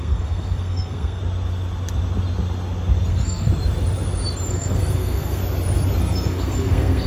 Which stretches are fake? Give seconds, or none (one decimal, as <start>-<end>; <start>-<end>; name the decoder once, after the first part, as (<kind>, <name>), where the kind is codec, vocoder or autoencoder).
0.0-1.2 (codec, SNAC); 3.1-3.5; 4.5-5.4; 6.0-7.1